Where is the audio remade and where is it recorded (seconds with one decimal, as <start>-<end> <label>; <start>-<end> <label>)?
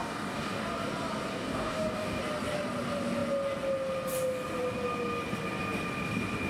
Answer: 0.0-0.6 remade; 0.6-1.3 recorded; 1.3-2.2 remade; 2.2-6.5 recorded